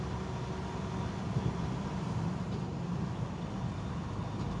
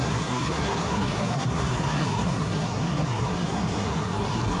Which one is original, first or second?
first